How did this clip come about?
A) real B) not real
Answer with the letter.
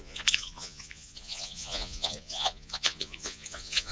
B